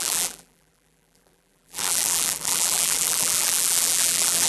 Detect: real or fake fake